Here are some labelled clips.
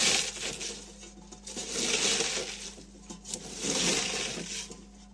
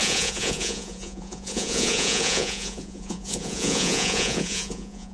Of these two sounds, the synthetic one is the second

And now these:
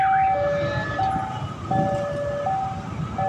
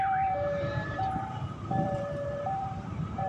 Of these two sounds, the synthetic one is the second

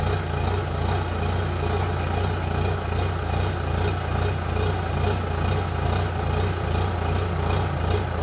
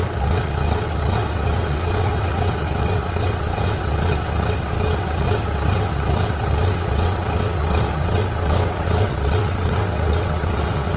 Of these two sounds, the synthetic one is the second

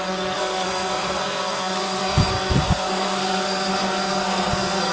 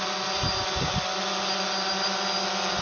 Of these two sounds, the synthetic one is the first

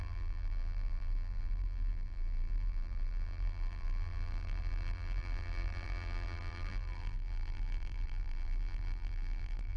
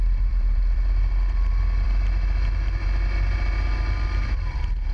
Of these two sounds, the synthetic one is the first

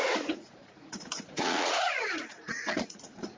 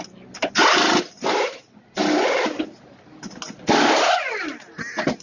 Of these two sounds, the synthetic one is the first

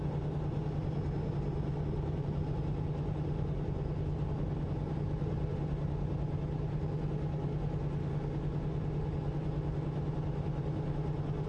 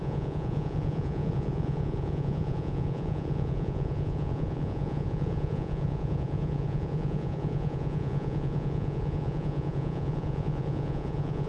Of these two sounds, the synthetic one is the second